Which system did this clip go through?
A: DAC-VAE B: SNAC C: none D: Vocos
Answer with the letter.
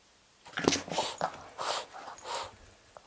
C